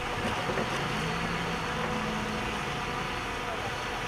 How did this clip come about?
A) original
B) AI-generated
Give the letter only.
A